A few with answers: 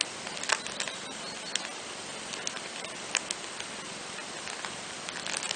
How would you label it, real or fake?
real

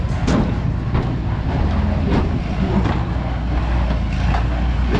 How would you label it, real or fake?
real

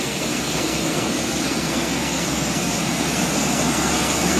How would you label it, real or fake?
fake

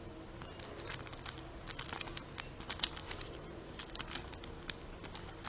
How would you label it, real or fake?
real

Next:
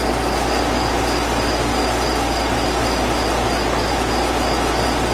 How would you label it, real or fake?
real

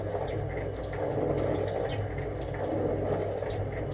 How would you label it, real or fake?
real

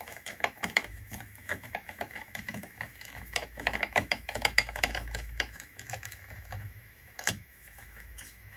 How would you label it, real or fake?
fake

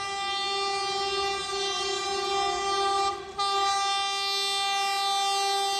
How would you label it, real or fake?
real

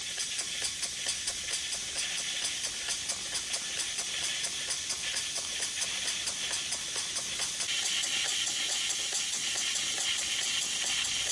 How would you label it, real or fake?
real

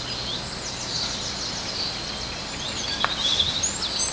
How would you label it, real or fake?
real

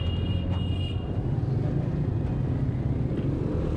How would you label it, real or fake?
real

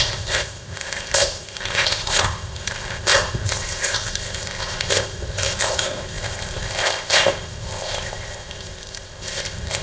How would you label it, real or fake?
fake